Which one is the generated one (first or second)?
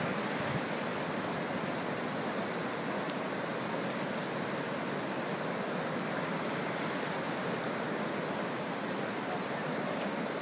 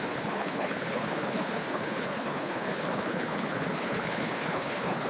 second